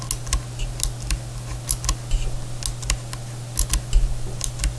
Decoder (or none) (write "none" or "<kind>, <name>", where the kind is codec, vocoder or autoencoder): none